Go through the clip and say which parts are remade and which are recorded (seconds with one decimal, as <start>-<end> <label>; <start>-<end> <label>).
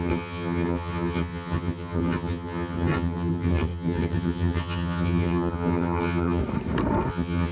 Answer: 0.0-6.4 remade; 6.4-7.1 recorded; 7.1-7.5 remade